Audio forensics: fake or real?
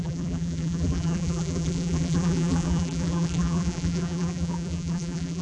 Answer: fake